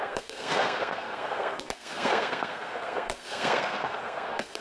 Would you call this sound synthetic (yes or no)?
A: yes